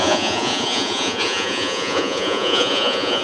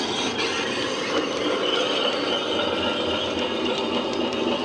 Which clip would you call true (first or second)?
second